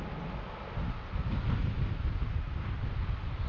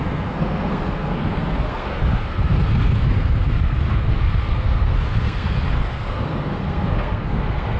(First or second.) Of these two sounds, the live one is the first